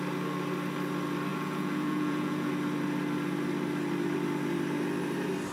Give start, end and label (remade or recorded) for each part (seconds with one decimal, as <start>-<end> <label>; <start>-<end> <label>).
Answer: 0.0-1.3 recorded; 1.3-2.5 remade; 2.5-5.5 recorded